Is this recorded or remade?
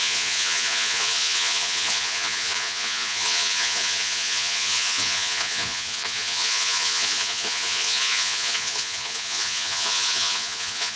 remade